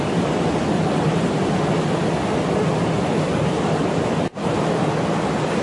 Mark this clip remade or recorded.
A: recorded